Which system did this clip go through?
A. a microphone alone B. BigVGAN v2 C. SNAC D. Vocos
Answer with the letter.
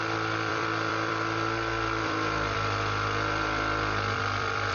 B